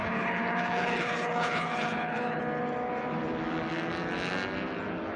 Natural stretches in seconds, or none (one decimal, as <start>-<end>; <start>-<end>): 2.4-5.2